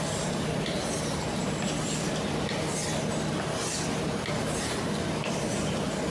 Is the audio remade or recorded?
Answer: recorded